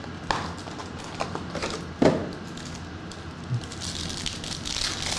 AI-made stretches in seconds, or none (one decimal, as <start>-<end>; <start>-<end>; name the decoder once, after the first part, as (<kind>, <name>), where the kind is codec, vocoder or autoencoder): 0.8-1.5 (vocoder, BigVGAN v2)